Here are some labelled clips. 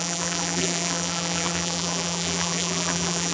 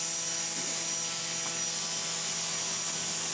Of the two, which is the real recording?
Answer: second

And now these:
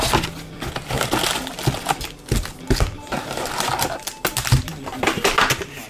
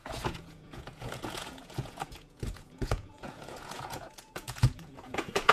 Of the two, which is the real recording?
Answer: first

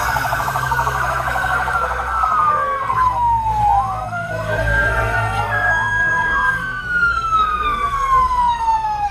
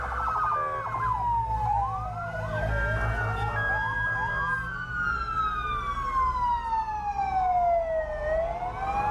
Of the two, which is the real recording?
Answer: second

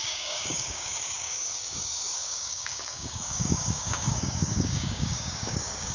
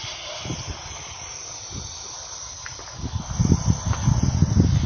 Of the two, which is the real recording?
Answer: second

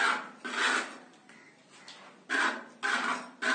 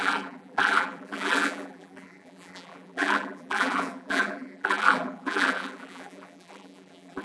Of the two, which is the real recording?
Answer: first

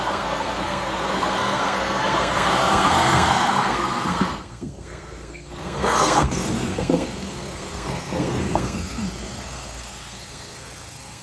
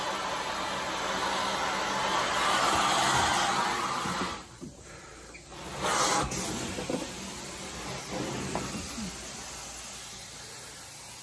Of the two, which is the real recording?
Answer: second